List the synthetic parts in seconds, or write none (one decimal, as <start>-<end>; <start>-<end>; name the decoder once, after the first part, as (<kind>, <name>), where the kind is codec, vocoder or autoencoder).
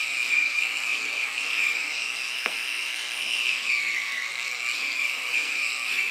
0.0-6.1 (codec, SNAC)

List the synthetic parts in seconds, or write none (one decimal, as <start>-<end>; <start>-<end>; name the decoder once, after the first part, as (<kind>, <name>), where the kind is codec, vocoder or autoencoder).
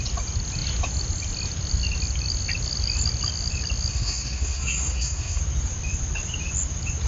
3.9-5.4 (codec, SNAC)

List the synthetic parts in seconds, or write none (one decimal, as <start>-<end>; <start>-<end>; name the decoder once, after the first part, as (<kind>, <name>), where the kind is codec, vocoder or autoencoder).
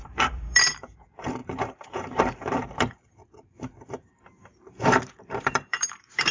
0.0-6.3 (vocoder, BigVGAN v2)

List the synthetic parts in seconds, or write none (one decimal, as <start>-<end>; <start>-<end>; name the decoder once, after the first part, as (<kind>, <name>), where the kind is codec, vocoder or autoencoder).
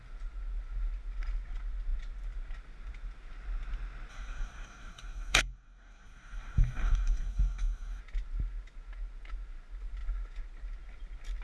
4.1-8.0 (codec, DAC)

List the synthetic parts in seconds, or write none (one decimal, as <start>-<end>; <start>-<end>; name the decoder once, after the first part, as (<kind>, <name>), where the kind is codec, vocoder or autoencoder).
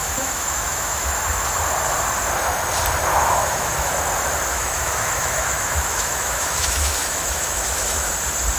0.0-1.1 (autoencoder, DAC-VAE); 3.1-3.9; 4.5-8.1